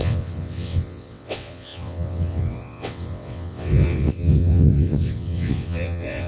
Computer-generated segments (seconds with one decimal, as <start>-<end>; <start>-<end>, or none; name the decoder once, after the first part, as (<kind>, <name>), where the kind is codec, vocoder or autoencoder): 0.0-6.3 (vocoder, WaveNeXt)

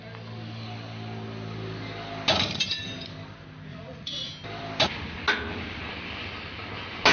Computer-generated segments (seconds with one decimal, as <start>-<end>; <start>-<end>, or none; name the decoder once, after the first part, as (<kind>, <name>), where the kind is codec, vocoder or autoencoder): 3.7-4.3 (vocoder, Vocos)